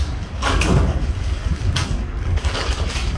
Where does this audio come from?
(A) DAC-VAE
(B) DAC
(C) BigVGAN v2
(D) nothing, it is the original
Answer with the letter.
B